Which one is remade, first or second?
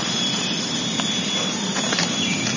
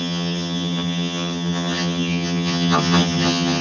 second